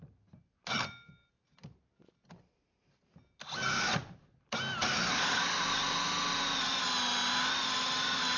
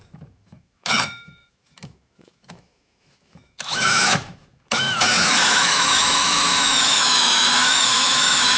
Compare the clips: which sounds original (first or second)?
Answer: first